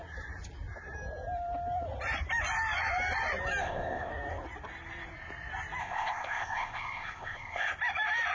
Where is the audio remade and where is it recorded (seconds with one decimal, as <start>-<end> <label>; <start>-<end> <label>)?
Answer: 0.0-3.6 recorded; 3.6-4.1 remade; 4.1-5.8 recorded; 5.8-7.7 remade; 7.7-8.3 recorded